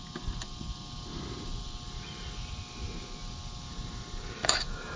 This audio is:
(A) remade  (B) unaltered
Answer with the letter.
B